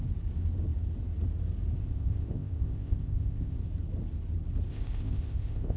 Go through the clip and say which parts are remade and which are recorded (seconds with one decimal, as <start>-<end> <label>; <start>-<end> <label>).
0.0-1.8 recorded; 1.8-3.6 remade; 3.6-4.7 recorded; 4.7-5.8 remade